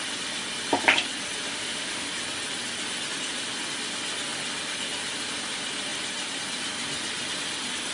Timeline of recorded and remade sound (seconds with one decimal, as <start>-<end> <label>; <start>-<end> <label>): 0.0-1.5 recorded; 1.5-2.1 remade; 2.1-7.9 recorded